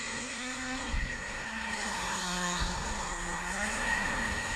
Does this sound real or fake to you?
fake